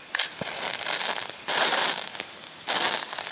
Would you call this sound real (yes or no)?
yes